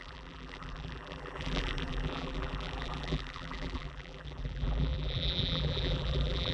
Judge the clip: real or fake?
fake